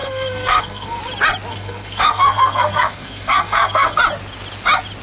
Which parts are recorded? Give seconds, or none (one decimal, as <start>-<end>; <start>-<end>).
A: 1.0-1.5; 4.0-5.0